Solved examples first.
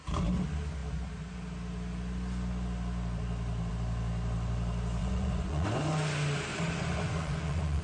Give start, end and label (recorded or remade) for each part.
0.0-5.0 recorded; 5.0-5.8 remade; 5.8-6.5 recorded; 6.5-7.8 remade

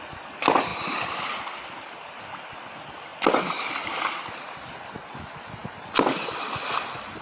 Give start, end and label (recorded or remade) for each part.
0.0-7.2 recorded

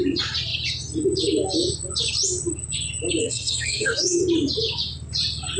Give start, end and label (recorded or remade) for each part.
0.0-3.2 recorded; 3.2-4.2 remade; 4.2-5.6 recorded

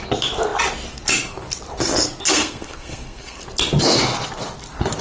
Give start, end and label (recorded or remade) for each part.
0.0-2.3 recorded; 2.3-3.4 remade; 3.4-5.0 recorded

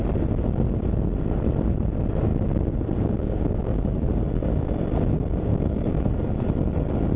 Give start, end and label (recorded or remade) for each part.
0.0-2.3 recorded; 2.3-4.1 remade; 4.1-5.5 recorded; 5.5-6.1 remade; 6.1-7.2 recorded

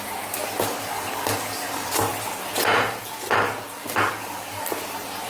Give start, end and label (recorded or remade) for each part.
0.0-0.8 recorded; 0.8-1.9 remade; 1.9-3.8 recorded; 3.8-4.6 remade; 4.6-5.3 recorded

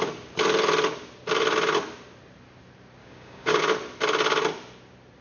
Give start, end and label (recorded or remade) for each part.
0.0-3.0 recorded; 3.0-3.6 remade; 3.6-5.2 recorded

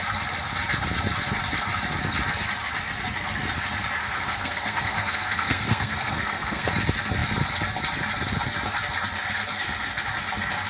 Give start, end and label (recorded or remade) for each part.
0.0-4.0 recorded; 4.0-6.7 remade; 6.7-10.7 recorded